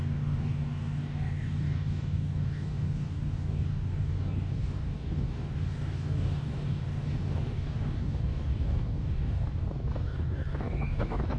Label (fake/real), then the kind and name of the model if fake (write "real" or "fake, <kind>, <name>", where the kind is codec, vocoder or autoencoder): fake, codec, DAC